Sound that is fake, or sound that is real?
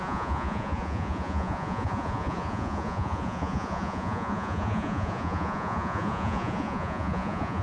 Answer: fake